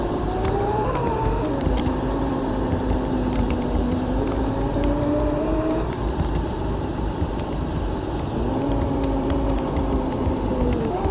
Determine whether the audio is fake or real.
fake